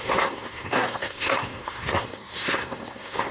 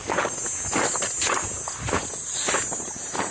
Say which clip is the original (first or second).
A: second